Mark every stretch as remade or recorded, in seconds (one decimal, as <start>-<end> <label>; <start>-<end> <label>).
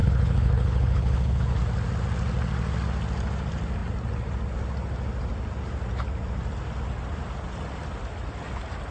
0.0-1.6 remade; 1.6-8.9 recorded